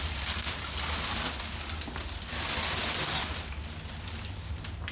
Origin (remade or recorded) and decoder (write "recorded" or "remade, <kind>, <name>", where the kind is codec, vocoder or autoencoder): recorded